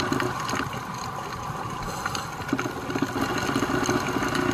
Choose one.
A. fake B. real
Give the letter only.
B